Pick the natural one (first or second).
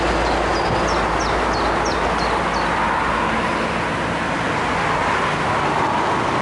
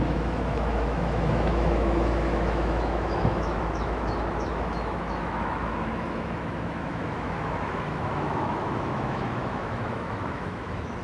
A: first